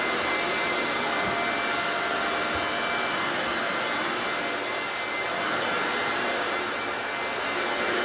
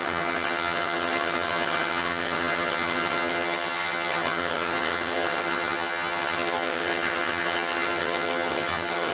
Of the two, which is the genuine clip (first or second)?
first